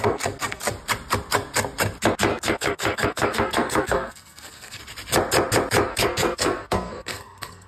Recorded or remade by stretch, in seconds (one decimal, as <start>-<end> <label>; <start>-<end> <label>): 0.0-0.6 remade; 0.6-2.3 recorded; 2.3-4.8 remade; 4.8-5.9 recorded; 5.9-7.7 remade